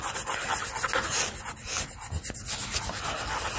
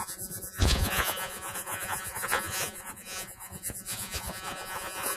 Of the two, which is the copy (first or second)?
second